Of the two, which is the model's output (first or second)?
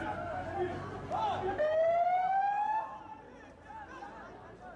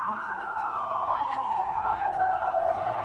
second